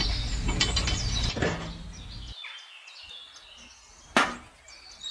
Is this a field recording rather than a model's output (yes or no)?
yes